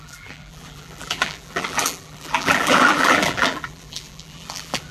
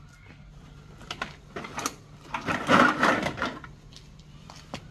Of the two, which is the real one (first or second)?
second